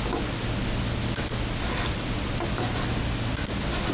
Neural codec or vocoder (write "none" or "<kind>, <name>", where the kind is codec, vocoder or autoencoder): none